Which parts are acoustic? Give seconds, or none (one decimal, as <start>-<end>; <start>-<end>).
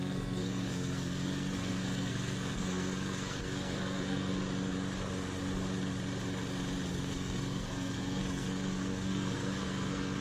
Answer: 4.4-6.9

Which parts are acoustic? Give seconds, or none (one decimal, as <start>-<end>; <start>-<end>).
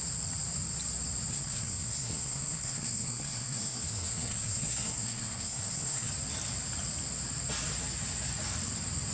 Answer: 0.0-1.3; 6.1-9.1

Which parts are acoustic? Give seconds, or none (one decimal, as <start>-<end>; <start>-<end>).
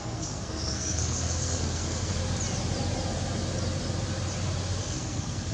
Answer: 2.2-4.8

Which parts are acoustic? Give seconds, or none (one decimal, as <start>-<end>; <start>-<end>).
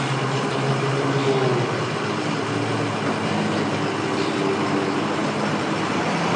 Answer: 0.0-6.4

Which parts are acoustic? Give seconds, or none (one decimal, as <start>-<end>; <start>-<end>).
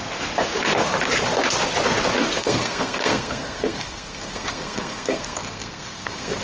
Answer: 0.0-2.4